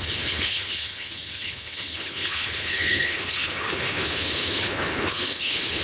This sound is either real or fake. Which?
fake